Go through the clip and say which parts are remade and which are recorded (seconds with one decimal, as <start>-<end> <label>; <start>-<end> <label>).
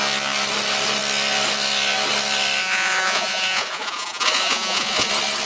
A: 0.0-2.6 recorded; 2.6-5.1 remade; 5.1-5.5 recorded